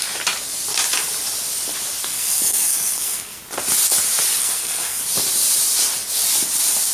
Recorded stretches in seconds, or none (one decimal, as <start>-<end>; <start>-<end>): 0.0-2.1; 3.4-4.4; 5.0-6.9